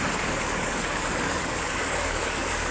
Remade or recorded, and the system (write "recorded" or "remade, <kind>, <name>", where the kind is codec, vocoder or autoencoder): remade, codec, DAC